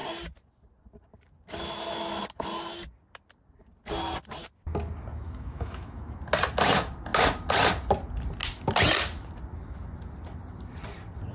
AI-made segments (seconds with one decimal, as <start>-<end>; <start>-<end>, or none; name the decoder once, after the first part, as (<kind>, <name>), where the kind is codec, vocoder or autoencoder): 5.1-6.2 (autoencoder, DAC-VAE)